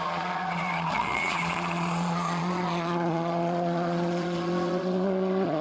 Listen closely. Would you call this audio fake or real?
fake